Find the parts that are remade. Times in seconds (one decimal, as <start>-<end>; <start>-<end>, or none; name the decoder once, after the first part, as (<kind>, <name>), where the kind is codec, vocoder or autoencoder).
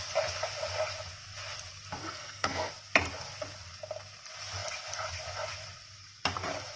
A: 2.0-2.7 (codec, SNAC)